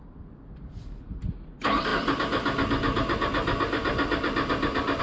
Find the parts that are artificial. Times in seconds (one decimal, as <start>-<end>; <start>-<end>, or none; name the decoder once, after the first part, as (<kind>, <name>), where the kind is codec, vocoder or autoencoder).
none